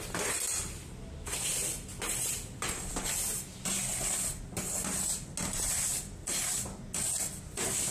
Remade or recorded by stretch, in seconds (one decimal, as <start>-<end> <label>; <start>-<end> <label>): 0.0-7.9 recorded